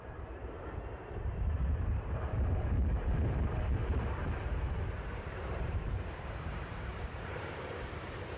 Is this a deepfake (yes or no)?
yes